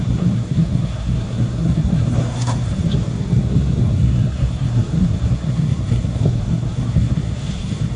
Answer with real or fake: fake